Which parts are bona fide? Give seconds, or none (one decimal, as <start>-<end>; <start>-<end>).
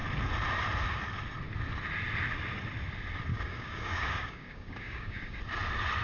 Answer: 0.0-3.3; 5.4-6.0